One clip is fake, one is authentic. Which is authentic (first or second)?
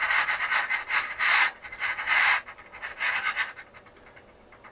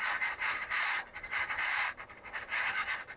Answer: first